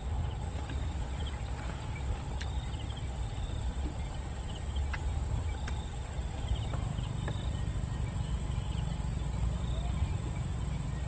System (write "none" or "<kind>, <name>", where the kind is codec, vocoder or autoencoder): none